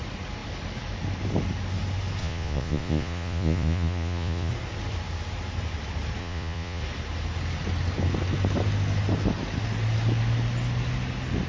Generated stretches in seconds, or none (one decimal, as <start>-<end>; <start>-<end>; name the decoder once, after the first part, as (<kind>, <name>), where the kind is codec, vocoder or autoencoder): 2.2-4.5 (vocoder, Vocos); 6.2-6.8